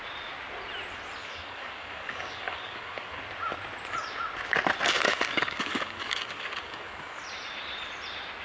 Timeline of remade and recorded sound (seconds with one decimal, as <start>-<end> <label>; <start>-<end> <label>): 0.0-1.2 recorded; 1.2-3.2 remade; 3.2-5.1 recorded; 5.1-7.2 remade; 7.2-8.4 recorded